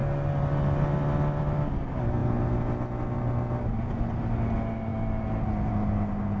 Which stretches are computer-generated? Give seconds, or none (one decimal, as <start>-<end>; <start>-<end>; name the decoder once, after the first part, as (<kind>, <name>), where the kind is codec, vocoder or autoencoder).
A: none